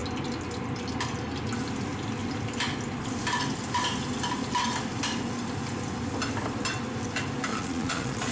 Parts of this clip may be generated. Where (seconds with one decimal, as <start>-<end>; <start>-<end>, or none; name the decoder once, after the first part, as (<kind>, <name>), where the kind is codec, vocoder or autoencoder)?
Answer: 7.5-8.3 (vocoder, Vocos)